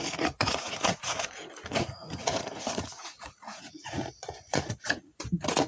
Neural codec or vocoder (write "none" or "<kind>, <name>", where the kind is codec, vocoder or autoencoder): vocoder, Vocos